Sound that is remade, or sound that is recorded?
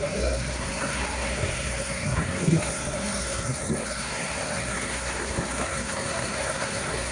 remade